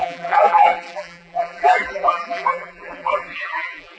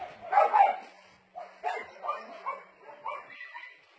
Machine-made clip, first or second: first